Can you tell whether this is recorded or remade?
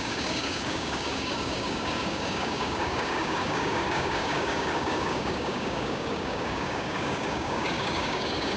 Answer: remade